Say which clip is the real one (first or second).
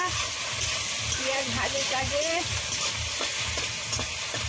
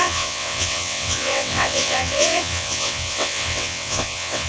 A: first